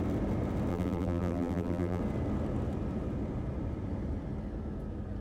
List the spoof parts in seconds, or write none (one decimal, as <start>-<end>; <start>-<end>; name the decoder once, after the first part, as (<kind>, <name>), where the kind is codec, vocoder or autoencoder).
0.7-2.0 (vocoder, BigVGAN v2)